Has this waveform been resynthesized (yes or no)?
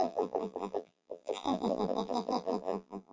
yes